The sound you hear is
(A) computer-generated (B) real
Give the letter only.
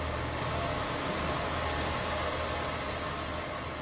B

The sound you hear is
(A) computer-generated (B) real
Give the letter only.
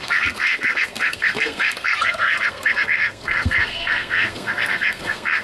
A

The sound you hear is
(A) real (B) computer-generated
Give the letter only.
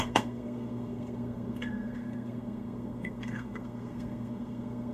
B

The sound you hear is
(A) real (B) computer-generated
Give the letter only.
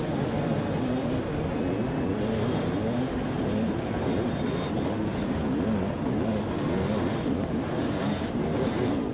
A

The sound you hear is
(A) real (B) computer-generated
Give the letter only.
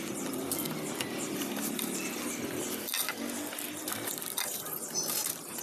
A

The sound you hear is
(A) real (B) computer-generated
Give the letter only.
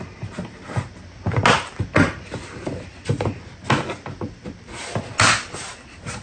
A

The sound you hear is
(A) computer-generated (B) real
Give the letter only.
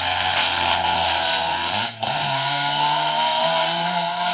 A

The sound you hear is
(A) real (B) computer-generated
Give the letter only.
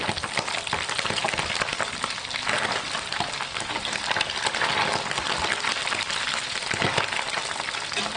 A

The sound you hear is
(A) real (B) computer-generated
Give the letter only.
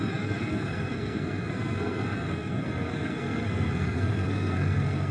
B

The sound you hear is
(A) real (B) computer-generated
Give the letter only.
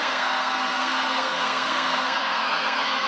B